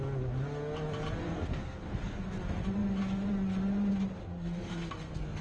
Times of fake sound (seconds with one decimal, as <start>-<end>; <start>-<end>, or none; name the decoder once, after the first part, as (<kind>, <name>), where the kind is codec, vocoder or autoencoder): 1.2-2.3 (codec, SNAC); 4.3-5.4